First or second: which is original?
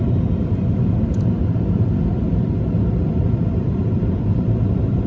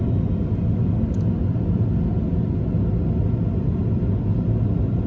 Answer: second